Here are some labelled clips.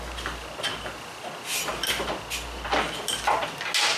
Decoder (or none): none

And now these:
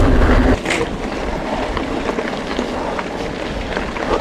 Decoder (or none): none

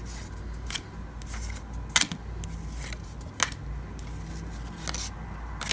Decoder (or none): none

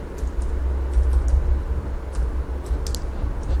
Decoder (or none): none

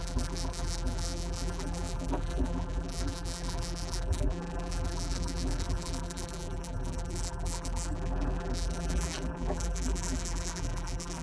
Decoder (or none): vocoder, BigVGAN v2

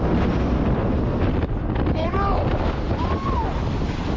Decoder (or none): none